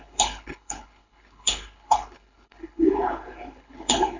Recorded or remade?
remade